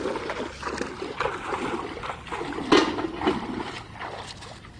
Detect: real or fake real